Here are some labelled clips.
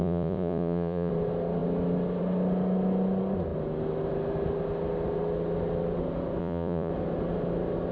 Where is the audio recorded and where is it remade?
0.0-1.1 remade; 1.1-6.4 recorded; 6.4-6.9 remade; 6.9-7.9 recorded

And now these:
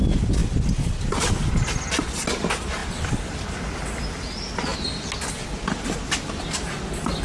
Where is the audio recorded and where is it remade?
0.0-7.2 recorded

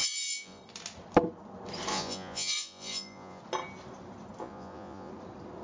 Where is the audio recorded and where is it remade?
0.0-0.6 remade; 0.6-1.9 recorded; 1.9-3.4 remade; 3.4-4.4 recorded; 4.4-5.1 remade; 5.1-5.6 recorded